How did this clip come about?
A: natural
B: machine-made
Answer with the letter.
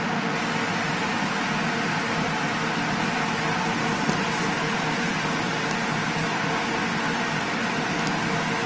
A